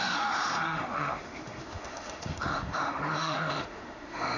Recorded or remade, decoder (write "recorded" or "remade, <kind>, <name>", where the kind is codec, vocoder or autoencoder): remade, autoencoder, DAC-VAE